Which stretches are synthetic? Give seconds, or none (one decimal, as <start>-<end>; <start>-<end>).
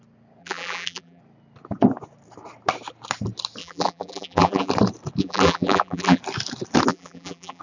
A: 0.4-1.2; 3.6-4.7; 5.2-6.2; 6.9-7.6